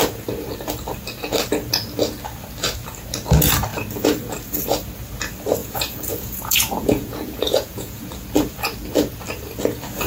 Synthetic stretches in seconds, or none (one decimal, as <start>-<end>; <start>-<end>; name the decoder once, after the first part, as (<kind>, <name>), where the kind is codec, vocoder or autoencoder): 5.6-8.0 (vocoder, Vocos)